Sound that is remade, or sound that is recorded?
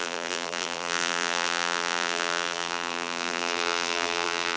remade